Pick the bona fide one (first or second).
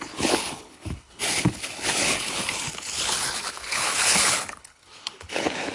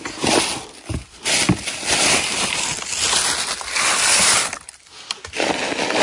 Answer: second